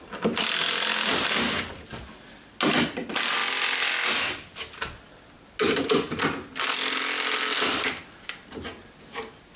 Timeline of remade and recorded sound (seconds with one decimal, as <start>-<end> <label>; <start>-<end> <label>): 0.0-9.6 recorded